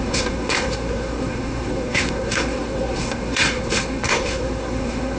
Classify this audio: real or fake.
fake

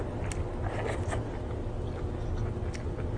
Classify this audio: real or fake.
real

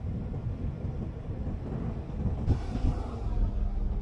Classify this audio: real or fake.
real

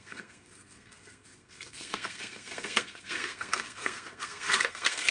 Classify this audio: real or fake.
fake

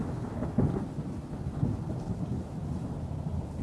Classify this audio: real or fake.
real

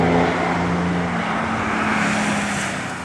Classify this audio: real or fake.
real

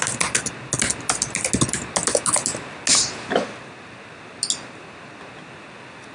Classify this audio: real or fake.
real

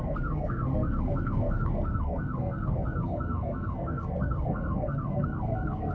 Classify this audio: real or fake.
fake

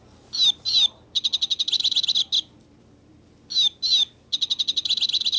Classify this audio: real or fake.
real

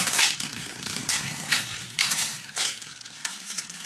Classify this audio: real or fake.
fake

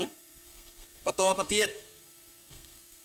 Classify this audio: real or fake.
fake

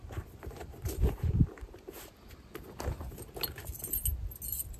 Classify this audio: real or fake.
real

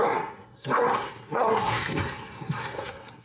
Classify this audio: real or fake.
fake